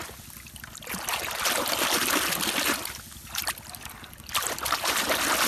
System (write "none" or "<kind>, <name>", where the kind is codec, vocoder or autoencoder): none